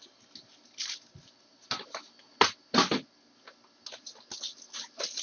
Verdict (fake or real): real